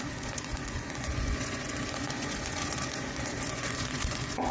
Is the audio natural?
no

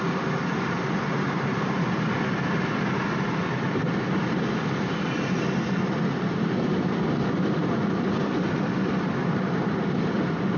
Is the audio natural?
yes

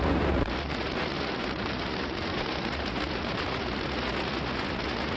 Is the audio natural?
no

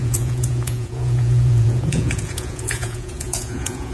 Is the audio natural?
no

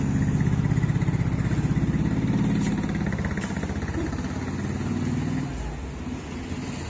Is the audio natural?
yes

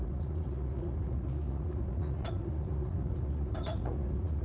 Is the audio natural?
no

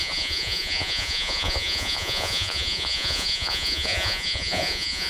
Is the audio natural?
no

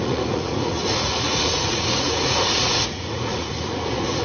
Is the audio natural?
no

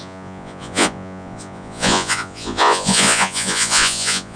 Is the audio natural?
no